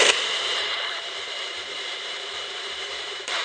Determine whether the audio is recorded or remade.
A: remade